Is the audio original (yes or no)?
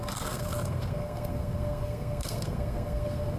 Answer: no